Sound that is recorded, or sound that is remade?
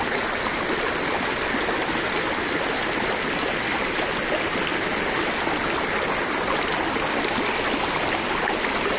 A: recorded